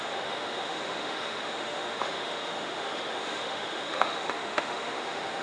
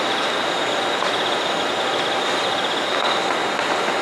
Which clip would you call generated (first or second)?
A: first